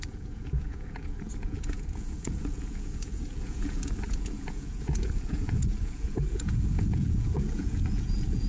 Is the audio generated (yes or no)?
yes